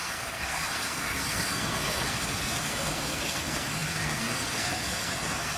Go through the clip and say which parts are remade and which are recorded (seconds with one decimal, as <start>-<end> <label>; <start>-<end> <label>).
0.0-5.6 remade